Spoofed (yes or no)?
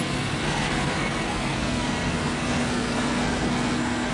yes